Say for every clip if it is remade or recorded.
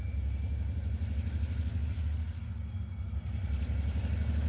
recorded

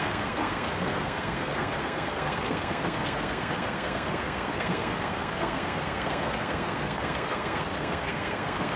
remade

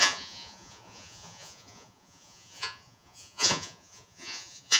remade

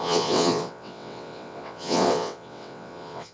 remade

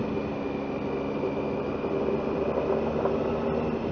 recorded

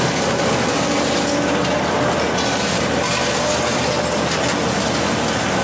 recorded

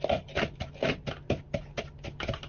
recorded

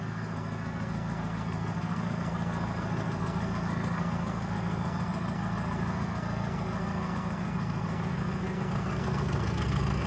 remade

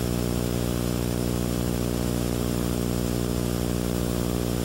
recorded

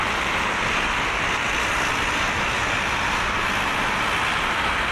recorded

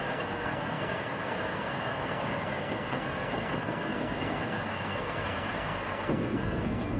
remade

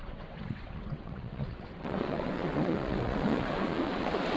remade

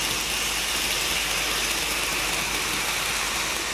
recorded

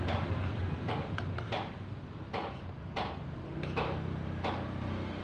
recorded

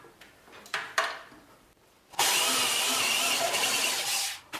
recorded